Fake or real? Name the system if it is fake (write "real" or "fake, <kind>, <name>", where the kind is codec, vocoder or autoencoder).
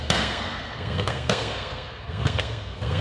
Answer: fake, codec, SNAC